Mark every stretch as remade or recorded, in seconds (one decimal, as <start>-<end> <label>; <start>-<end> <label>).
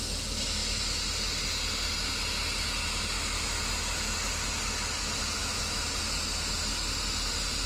0.0-5.4 recorded; 5.4-6.0 remade; 6.0-7.7 recorded